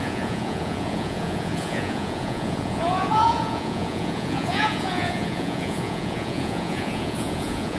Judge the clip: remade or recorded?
remade